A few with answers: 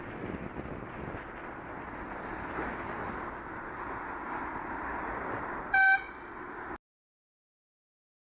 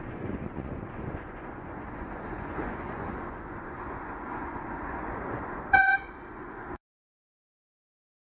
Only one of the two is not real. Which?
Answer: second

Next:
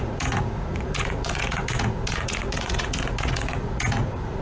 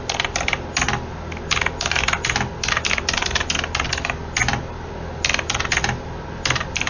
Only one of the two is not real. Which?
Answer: first